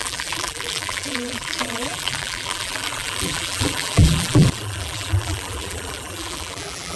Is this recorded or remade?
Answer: remade